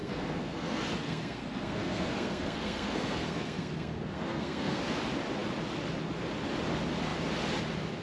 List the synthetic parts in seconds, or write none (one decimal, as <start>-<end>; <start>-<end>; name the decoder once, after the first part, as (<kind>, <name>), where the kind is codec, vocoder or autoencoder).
0.0-4.8 (codec, SNAC)